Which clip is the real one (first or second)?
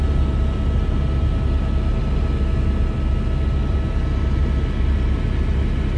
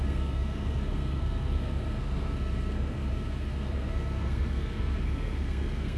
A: first